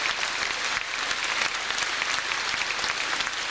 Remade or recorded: recorded